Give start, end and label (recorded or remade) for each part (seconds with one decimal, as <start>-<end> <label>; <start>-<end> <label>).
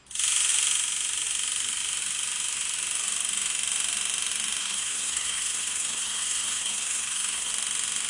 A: 0.0-4.6 recorded; 4.6-7.5 remade; 7.5-8.1 recorded